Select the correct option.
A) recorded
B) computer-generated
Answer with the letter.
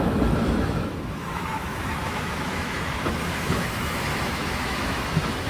B